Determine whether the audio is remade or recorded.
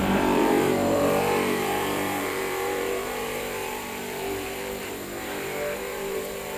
remade